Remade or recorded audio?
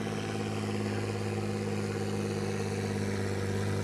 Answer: recorded